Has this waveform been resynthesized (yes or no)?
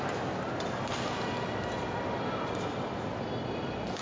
no